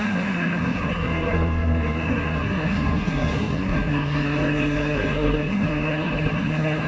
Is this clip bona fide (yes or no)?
no